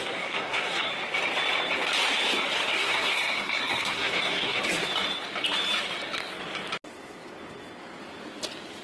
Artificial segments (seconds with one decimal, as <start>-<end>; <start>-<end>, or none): 0.0-0.9; 2.7-4.6